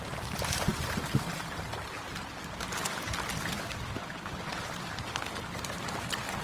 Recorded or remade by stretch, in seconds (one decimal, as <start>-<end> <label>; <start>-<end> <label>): 0.0-6.4 recorded